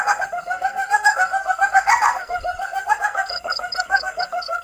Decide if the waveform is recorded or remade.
remade